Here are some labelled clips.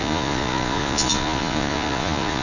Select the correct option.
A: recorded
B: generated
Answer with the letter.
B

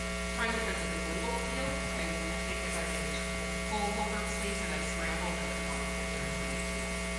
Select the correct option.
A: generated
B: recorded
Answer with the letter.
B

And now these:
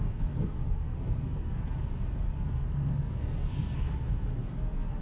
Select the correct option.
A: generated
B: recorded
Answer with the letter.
A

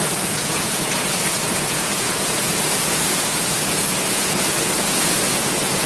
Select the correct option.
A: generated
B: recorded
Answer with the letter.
A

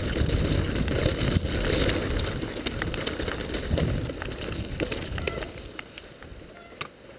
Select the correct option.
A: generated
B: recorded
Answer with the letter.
B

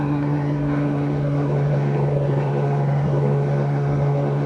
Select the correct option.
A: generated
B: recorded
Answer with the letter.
A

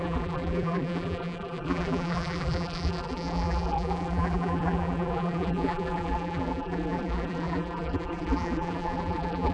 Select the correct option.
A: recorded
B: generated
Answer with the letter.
B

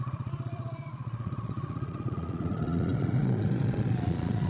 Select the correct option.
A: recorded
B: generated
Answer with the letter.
B